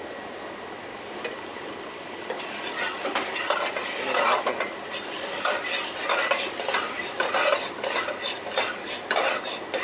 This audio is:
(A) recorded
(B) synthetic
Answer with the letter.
A